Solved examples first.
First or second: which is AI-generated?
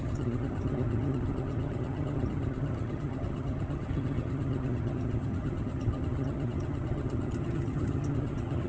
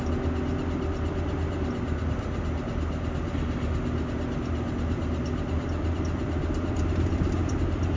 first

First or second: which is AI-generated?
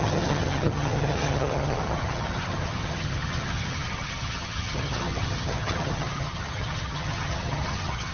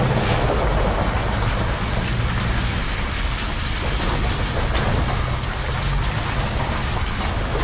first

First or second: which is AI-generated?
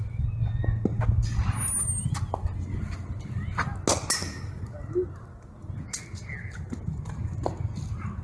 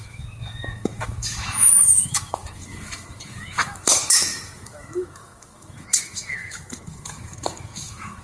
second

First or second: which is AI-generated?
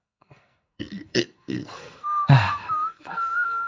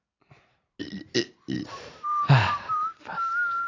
first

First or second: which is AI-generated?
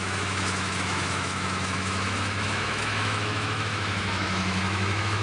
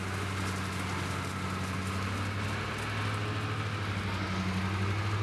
first